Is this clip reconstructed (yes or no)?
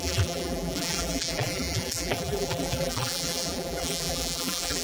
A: yes